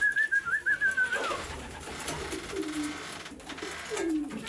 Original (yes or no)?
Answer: yes